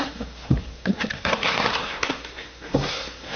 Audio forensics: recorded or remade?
remade